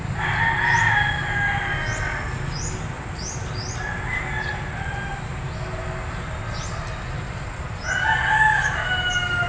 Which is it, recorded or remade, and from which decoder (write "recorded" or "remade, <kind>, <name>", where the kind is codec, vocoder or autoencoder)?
recorded